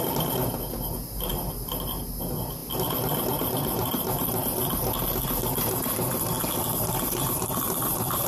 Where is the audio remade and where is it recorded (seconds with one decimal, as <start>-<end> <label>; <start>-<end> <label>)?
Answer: 0.0-8.3 recorded